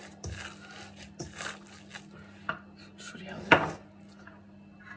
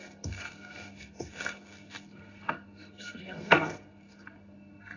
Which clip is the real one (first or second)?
first